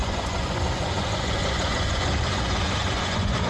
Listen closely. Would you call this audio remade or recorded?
remade